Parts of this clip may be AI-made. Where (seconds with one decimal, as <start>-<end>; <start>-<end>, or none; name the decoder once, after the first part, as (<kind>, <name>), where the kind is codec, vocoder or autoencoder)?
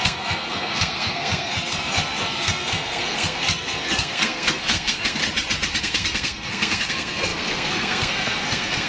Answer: 0.0-5.2 (codec, SNAC); 5.8-8.9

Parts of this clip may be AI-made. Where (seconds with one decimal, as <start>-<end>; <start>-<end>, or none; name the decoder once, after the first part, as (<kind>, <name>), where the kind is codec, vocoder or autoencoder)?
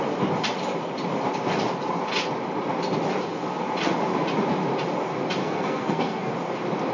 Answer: 5.4-6.3 (codec, SNAC)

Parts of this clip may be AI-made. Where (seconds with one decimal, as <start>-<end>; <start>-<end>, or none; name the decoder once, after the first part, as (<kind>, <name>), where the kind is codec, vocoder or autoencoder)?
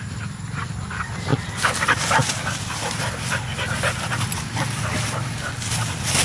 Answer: none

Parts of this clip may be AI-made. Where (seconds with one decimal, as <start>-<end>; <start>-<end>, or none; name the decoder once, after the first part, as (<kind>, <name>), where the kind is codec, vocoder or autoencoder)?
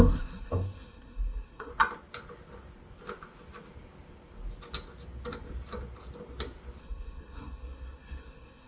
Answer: 0.0-1.7 (codec, SNAC); 6.8-8.7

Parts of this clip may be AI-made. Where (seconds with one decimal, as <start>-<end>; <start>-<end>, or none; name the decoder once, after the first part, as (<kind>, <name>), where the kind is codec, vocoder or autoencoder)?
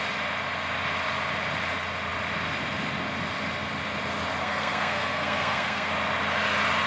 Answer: 4.4-5.9 (codec, SNAC)